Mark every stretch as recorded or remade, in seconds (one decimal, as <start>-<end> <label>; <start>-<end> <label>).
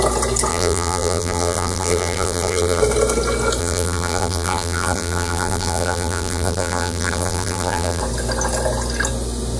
0.0-0.5 recorded; 0.5-2.8 remade; 2.8-3.6 recorded; 3.6-8.0 remade; 8.0-9.6 recorded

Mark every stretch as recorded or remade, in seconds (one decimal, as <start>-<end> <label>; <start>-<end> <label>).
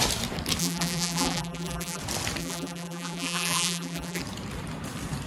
0.0-0.6 recorded; 0.6-2.0 remade; 2.0-2.4 recorded; 2.4-4.2 remade; 4.2-5.3 recorded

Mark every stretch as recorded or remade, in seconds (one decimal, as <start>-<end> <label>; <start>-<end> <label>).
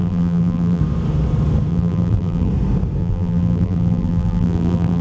0.0-0.8 remade; 0.8-1.7 recorded; 1.7-2.5 remade; 2.5-3.0 recorded; 3.0-5.0 remade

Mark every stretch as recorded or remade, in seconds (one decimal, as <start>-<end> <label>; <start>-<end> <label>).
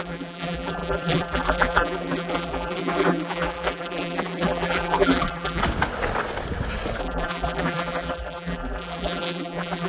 0.0-5.6 remade; 5.6-7.0 recorded; 7.0-9.9 remade